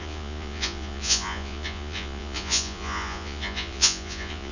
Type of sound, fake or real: fake